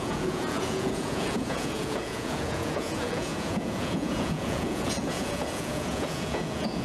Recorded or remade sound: remade